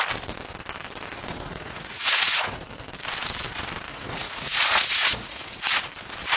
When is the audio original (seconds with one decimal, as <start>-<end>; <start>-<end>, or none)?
0.0-1.3; 2.7-3.9; 5.8-6.4